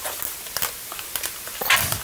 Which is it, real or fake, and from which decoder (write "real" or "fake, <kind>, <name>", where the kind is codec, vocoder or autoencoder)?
real